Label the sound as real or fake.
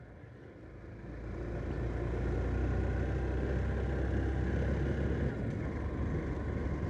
real